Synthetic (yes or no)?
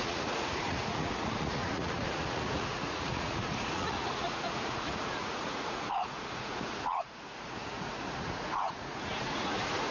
yes